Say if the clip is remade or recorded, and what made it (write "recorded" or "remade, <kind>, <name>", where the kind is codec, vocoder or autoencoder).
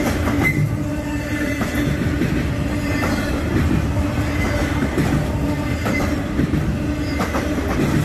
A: recorded